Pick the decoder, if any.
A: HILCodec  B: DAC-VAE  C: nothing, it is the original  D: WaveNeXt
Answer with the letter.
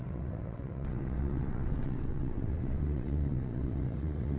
D